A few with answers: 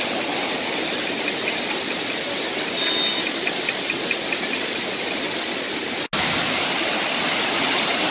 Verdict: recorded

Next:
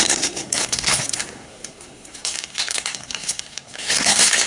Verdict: remade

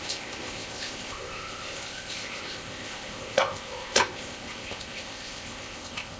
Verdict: remade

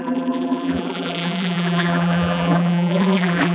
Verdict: remade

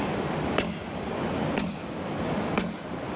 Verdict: remade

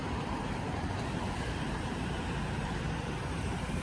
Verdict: remade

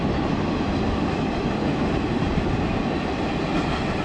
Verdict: recorded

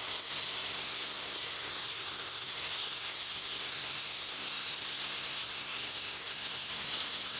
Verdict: remade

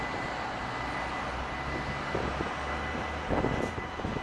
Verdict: recorded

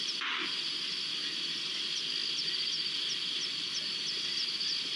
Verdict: recorded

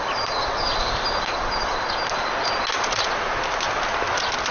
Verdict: recorded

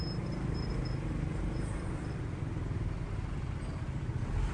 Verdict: recorded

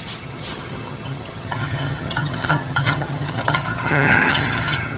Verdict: remade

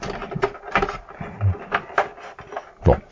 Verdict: recorded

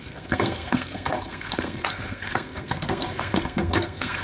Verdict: remade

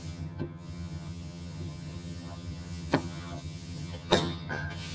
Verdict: remade